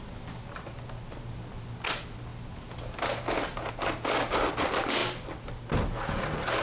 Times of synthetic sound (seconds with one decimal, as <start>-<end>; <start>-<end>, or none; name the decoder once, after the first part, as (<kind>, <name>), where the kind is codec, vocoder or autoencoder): none